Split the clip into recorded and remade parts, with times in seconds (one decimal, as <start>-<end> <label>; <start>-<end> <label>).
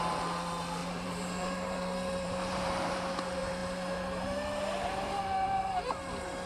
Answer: 0.0-0.8 recorded; 0.8-3.0 remade; 3.0-3.6 recorded; 3.6-5.2 remade; 5.2-6.5 recorded